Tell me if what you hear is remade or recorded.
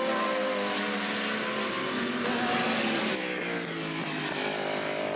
recorded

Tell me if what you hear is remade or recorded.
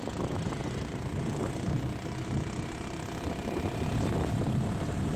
recorded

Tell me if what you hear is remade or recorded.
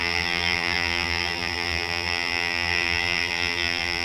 remade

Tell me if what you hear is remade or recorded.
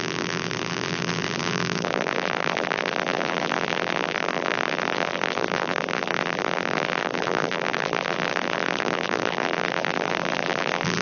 remade